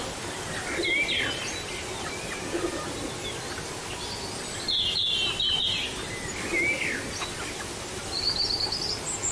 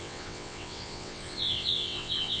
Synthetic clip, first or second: second